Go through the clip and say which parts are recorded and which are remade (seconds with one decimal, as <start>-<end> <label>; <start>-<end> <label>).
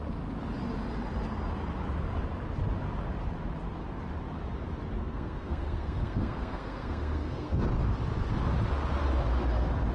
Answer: 0.0-5.0 recorded; 5.0-7.6 remade; 7.6-9.9 recorded